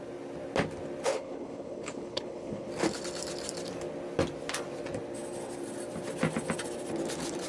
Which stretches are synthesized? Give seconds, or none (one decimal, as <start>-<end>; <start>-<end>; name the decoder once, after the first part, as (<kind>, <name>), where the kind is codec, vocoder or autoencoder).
1.1-2.7 (codec, HILCodec)